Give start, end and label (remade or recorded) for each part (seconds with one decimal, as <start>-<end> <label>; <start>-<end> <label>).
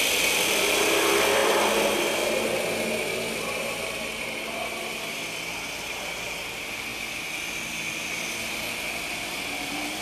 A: 0.0-10.0 recorded